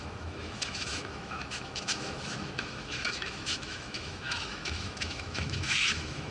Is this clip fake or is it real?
fake